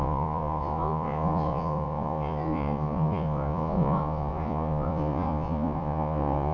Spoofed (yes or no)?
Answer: yes